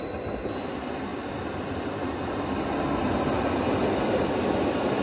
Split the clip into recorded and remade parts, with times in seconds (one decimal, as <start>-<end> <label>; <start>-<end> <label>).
0.0-5.0 recorded